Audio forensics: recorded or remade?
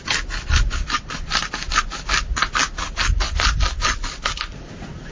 recorded